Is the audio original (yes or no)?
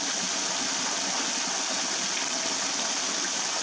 yes